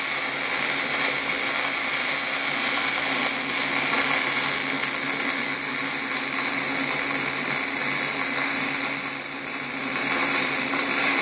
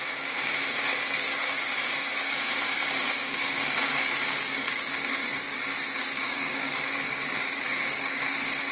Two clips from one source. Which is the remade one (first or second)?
second